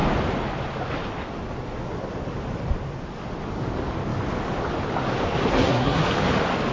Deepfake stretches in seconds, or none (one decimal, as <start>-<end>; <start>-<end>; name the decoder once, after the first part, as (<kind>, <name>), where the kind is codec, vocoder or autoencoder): 5.5-6.1 (codec, SNAC)